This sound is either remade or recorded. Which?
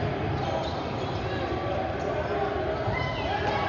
recorded